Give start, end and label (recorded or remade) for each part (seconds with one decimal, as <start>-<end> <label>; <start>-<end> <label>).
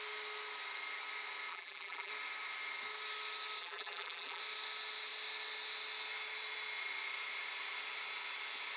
0.0-1.5 recorded; 1.5-2.1 remade; 2.1-3.6 recorded; 3.6-4.4 remade; 4.4-8.8 recorded